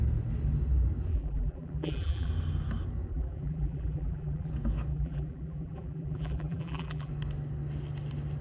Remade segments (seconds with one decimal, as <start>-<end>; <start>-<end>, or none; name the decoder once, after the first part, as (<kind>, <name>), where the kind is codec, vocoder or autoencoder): 1.1-2.3 (vocoder, BigVGAN v2); 3.1-4.5; 4.9-7.1